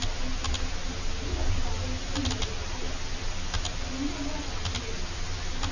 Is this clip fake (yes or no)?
no